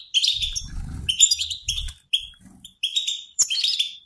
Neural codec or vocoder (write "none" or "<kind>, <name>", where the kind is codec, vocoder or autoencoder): vocoder, BigVGAN v2